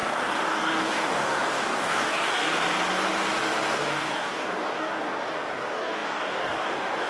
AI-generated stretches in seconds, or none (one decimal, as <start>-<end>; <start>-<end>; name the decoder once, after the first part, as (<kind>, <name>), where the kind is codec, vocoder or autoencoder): 0.0-2.6 (codec, DAC); 3.7-7.1